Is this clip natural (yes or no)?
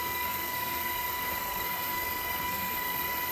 no